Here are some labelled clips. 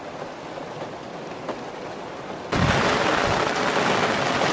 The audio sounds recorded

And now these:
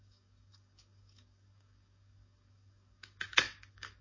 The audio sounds remade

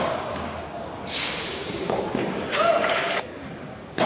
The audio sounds remade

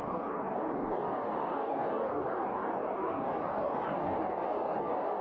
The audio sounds remade